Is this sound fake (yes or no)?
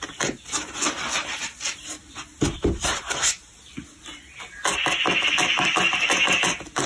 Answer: no